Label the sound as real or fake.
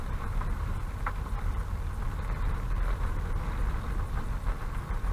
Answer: fake